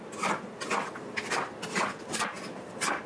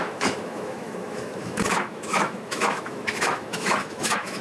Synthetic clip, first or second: second